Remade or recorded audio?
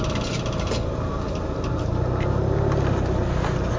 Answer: recorded